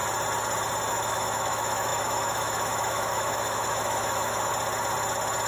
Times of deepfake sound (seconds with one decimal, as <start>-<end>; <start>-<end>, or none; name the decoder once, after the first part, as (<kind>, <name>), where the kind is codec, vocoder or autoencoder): 0.9-4.5 (autoencoder, DAC-VAE)